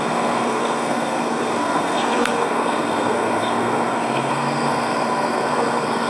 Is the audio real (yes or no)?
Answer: no